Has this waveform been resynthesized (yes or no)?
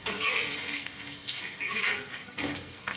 yes